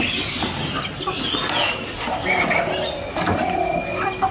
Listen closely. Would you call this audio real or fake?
real